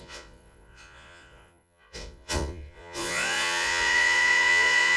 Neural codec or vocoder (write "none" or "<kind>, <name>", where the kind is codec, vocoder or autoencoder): vocoder, Vocos